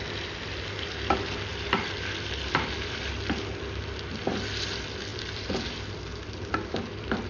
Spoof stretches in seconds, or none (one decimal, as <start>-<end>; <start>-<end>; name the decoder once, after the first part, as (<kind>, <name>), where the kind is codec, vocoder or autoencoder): 1.5-3.0 (vocoder, BigVGAN v2); 5.1-7.3